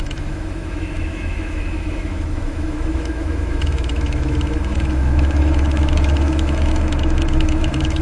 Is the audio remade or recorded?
remade